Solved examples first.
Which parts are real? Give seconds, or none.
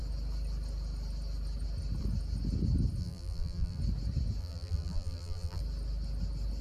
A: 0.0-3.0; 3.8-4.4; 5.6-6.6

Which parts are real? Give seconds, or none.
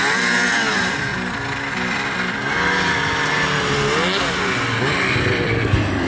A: 1.1-4.8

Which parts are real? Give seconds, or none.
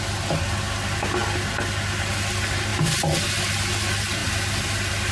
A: 0.0-1.2; 2.1-2.7; 3.2-4.2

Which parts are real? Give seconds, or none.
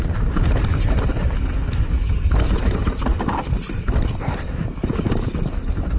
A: 0.7-1.8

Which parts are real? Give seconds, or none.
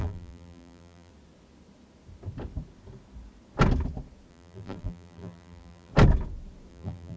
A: 1.1-4.3; 5.9-6.7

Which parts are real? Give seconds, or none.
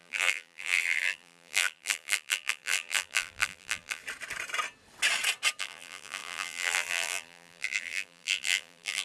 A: 4.0-5.6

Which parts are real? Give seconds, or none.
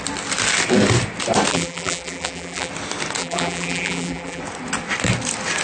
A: 0.0-1.5; 2.7-3.2; 4.4-5.6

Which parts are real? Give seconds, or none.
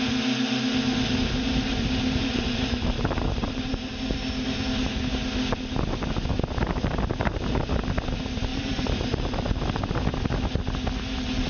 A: 0.0-1.4; 4.2-8.5; 9.8-11.5